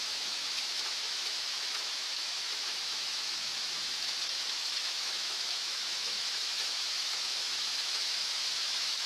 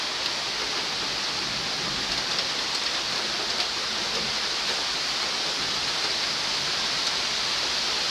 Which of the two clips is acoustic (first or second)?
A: second